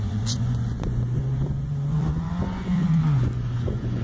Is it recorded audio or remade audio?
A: remade